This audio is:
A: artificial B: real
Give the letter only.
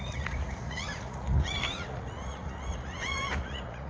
A